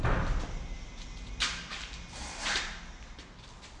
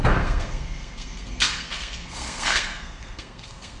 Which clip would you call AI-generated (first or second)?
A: second